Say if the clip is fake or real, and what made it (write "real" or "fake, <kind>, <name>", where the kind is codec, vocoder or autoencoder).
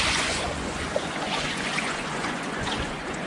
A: fake, vocoder, Vocos